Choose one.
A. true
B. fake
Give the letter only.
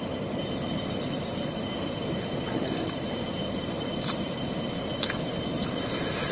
A